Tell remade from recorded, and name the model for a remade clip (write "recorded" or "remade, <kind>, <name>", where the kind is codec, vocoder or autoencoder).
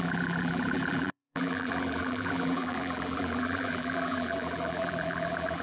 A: remade, vocoder, BigVGAN v2